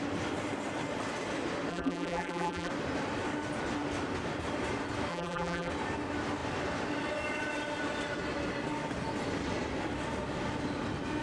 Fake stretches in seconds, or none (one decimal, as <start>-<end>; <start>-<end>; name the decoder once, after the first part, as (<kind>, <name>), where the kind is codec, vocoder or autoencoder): 1.7-2.7 (vocoder, BigVGAN v2); 5.1-5.7